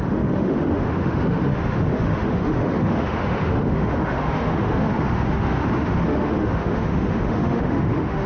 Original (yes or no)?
no